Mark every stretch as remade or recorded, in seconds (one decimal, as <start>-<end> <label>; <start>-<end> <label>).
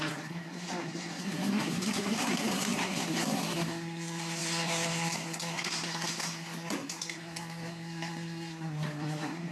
0.0-9.5 remade